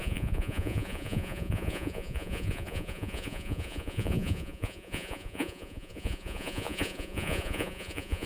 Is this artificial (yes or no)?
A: yes